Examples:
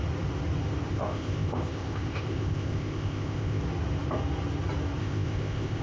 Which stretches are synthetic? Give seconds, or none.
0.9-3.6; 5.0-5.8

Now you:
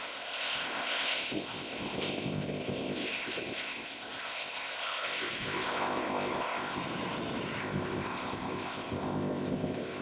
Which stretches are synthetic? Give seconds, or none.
0.0-6.8; 7.6-10.0

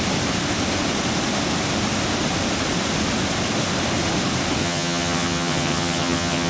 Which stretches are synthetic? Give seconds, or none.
4.6-6.5

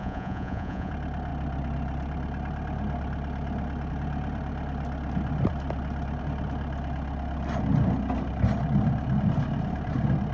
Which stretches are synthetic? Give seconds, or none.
0.0-0.9

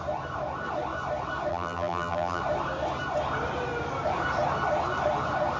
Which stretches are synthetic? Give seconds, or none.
1.5-2.4

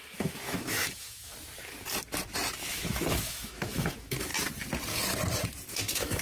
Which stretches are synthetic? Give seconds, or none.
0.0-1.3; 2.7-4.3; 5.7-6.2